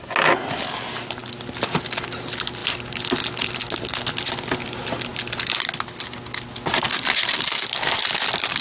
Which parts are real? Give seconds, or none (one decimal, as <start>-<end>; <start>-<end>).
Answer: 0.0-8.6